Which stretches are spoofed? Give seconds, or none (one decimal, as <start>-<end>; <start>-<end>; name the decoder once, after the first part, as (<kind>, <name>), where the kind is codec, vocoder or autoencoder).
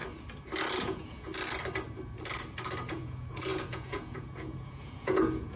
0.8-1.3 (vocoder, Vocos); 2.9-5.6